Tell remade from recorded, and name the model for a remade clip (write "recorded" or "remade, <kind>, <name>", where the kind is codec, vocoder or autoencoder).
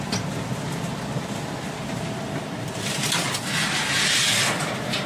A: recorded